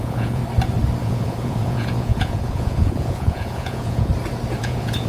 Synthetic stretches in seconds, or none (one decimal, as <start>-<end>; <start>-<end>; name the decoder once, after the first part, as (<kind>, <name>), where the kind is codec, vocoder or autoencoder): 0.0-0.4 (vocoder, Vocos); 1.0-4.1; 4.6-5.1